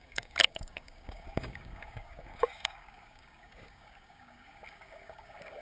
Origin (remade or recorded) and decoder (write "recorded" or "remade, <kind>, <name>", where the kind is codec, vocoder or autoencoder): remade, codec, DAC